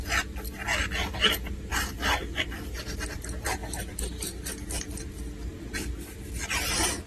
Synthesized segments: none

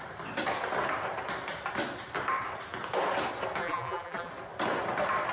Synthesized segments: 3.6-4.3

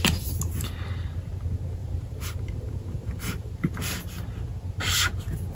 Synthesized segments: 1.8-3.5

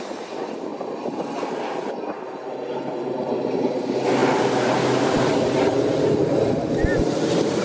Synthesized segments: none

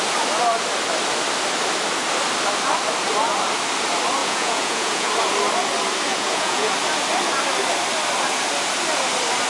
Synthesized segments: 4.2-5.1; 6.1-6.7

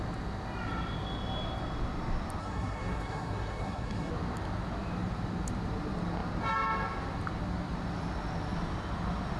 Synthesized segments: 2.4-4.1